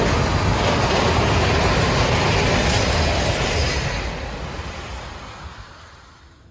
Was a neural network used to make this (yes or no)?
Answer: no